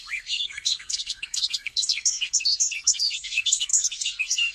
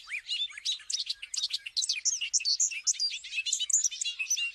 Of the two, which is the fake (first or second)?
first